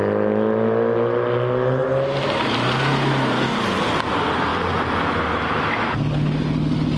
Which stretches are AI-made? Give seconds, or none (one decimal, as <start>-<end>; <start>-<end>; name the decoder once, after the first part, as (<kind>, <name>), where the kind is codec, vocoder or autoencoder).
none